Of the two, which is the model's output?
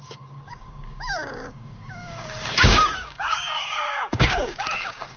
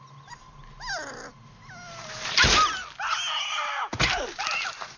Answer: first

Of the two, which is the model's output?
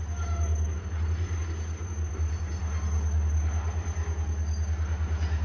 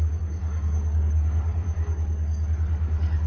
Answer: second